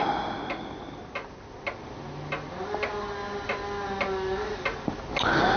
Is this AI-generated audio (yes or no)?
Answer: no